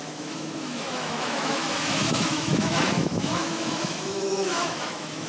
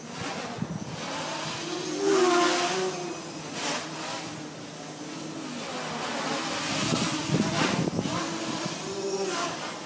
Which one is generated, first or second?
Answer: first